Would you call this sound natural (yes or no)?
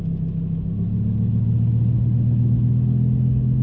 yes